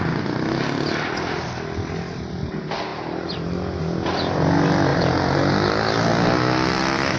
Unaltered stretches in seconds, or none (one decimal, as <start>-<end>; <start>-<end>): 0.0-4.9; 5.5-7.2